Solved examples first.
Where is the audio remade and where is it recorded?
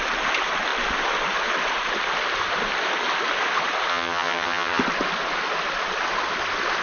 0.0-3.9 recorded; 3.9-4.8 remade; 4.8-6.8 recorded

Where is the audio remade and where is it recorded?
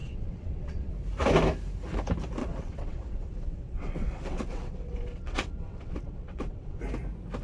0.0-0.9 remade; 0.9-2.4 recorded; 2.4-6.8 remade; 6.8-7.4 recorded